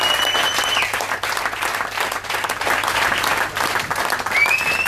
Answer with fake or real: real